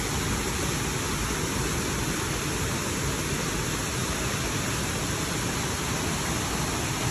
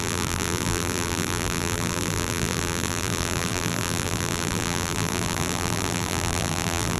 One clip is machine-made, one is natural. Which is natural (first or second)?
first